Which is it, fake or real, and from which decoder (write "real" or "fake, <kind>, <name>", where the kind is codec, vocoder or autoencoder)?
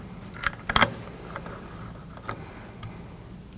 real